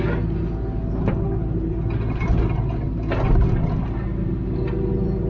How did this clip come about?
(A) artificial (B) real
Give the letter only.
B